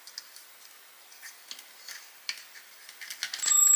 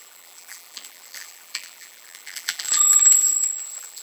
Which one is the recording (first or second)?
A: first